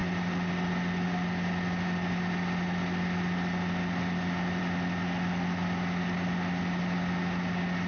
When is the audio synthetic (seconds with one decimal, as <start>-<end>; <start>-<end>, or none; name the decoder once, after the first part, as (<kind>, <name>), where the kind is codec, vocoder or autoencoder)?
none